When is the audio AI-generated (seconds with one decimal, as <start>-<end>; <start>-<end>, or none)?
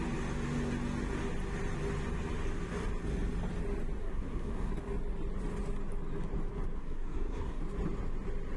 4.0-4.7; 6.8-7.6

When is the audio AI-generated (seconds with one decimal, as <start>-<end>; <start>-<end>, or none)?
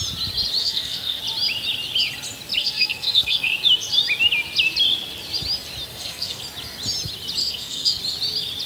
0.6-1.2; 2.6-3.5; 5.9-6.4; 7.4-8.0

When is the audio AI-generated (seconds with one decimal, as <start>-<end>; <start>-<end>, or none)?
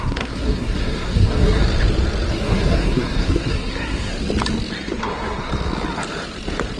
0.0-1.6; 2.3-4.1; 4.9-5.5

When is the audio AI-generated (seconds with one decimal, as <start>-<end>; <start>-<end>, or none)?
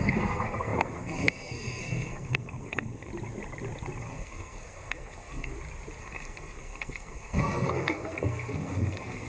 0.0-3.1; 4.0-5.5; 6.0-9.3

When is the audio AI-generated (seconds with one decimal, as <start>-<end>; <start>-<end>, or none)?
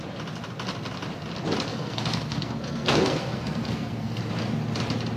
1.7-4.2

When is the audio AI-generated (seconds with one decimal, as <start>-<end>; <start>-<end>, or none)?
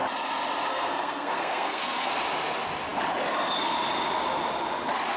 0.7-2.1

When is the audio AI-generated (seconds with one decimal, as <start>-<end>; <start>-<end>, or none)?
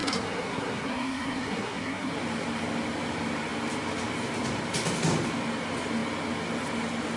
0.0-2.1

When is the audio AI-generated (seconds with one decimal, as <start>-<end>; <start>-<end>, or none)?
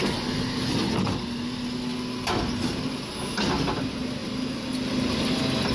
none